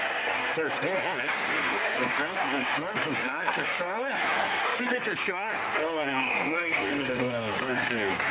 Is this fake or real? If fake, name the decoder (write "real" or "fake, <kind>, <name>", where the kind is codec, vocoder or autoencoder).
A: fake, codec, SNAC